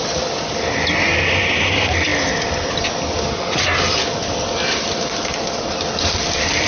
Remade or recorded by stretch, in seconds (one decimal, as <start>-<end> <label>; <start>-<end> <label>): 0.0-6.7 recorded